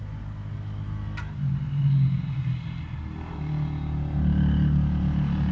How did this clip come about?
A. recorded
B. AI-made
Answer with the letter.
A